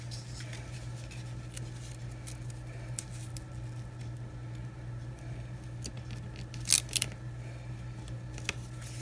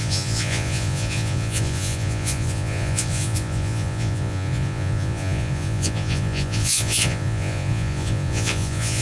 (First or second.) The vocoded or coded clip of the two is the second